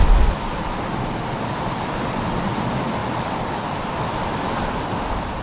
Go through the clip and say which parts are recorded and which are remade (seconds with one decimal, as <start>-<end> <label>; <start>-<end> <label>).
0.0-5.4 recorded